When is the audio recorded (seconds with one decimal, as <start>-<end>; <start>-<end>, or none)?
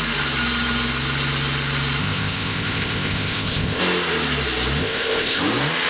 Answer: 0.0-2.0; 3.8-4.8; 5.4-5.9